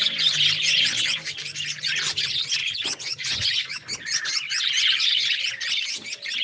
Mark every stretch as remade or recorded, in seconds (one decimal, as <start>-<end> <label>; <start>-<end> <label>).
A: 0.0-2.6 recorded; 2.6-3.9 remade; 3.9-6.4 recorded